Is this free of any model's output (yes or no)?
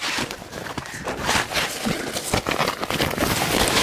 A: yes